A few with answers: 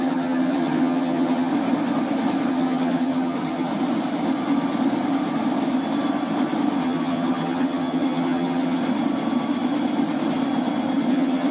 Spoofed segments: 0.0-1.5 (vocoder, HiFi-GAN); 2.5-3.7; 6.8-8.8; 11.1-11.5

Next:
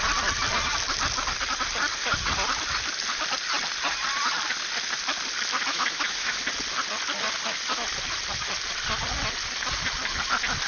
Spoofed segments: 5.7-6.4 (autoencoder, DAC-VAE)

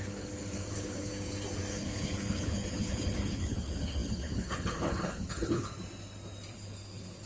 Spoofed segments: 0.0-1.1 (codec, HILCodec); 1.7-5.7; 6.5-7.3

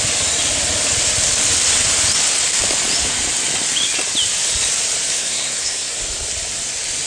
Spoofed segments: 5.1-5.9 (codec, SNAC)

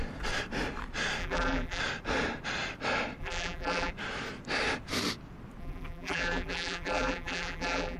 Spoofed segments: 1.2-1.8 (vocoder, BigVGAN v2); 3.2-3.9; 5.6-8.0